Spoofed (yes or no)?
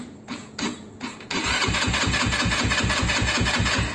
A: yes